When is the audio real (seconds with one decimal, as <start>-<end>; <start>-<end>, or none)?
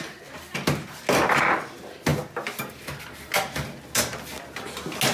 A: 0.0-5.1